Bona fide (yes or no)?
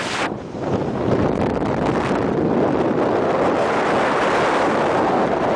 yes